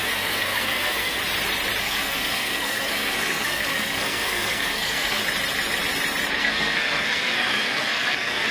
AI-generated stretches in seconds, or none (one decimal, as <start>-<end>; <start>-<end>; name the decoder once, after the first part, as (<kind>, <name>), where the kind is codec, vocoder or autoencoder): 0.0-1.2 (codec, SNAC); 1.8-5.2; 6.4-8.5